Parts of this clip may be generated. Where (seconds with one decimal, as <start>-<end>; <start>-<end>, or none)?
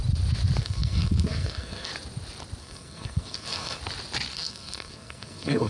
0.6-1.9; 2.6-3.8; 4.3-5.7